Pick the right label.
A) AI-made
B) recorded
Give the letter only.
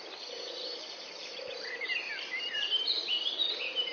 A